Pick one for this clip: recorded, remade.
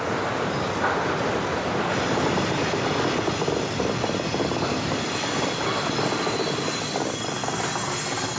recorded